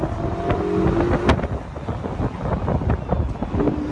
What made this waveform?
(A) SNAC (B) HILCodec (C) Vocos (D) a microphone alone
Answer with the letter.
D